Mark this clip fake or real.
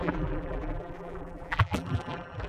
fake